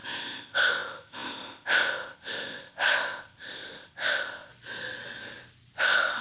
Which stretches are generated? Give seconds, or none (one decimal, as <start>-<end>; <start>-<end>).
0.0-4.5; 5.8-6.2

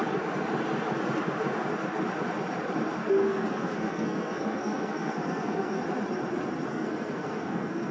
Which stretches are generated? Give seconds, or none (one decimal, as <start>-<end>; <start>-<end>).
3.0-5.8; 6.7-7.9

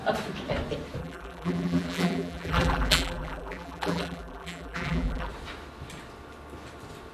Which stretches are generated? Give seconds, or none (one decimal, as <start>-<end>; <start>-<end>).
1.0-5.3